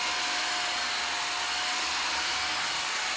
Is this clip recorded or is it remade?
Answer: recorded